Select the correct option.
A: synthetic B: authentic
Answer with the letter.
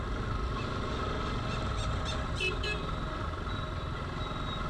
B